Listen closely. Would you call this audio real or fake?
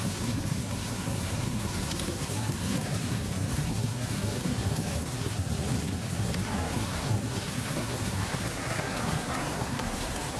fake